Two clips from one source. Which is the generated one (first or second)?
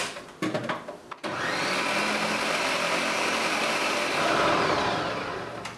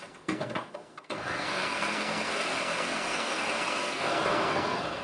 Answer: second